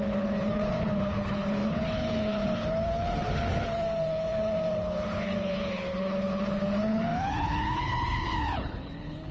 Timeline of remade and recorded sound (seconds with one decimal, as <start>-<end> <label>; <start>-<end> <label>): 0.0-9.3 remade